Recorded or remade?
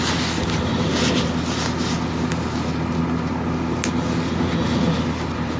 recorded